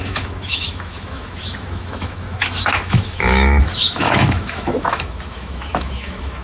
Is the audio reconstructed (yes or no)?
yes